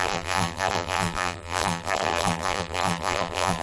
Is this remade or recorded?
remade